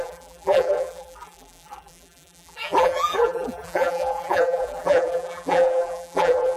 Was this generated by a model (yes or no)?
yes